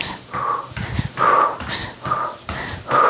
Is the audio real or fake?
real